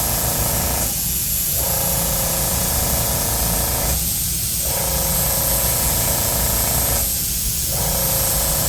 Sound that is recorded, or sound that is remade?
remade